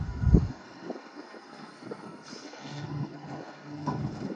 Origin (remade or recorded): remade